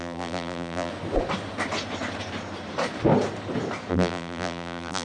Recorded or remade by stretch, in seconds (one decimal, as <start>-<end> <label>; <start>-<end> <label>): 0.0-0.9 remade; 0.9-3.9 recorded; 3.9-5.0 remade